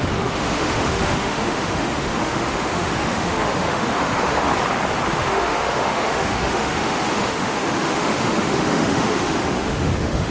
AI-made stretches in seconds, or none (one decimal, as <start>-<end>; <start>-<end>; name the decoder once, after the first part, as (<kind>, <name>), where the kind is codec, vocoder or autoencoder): 0.0-4.5 (autoencoder, DAC-VAE); 5.1-10.3